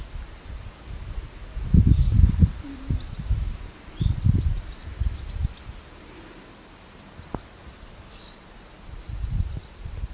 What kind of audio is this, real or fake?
real